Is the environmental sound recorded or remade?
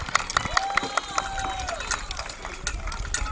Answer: recorded